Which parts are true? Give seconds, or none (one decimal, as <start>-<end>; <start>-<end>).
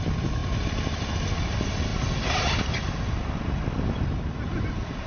0.0-5.1